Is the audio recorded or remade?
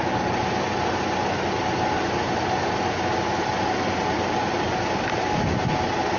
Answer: recorded